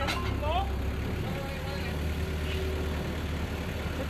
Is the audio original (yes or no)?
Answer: yes